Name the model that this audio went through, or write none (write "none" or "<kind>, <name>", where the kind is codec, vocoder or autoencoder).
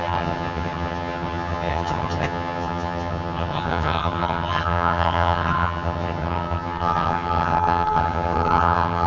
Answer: vocoder, HiFi-GAN